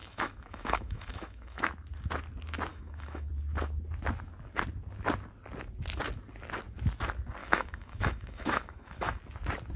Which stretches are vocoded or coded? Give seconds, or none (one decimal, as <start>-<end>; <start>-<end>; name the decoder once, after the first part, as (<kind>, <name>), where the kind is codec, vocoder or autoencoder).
0.0-1.6 (autoencoder, DAC-VAE); 2.7-3.3; 7.4-9.2